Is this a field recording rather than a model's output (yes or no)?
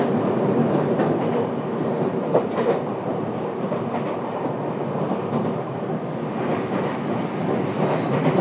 yes